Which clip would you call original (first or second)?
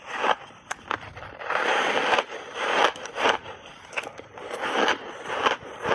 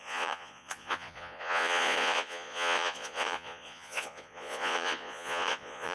first